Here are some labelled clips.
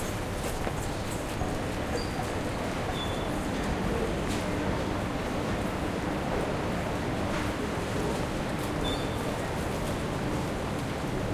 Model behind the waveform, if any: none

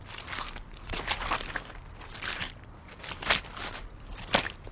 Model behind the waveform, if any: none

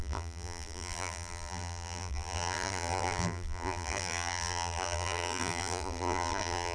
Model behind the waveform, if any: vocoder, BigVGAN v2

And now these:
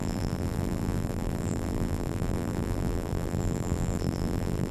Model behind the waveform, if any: vocoder, BigVGAN v2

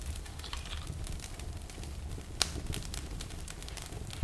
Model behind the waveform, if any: vocoder, BigVGAN v2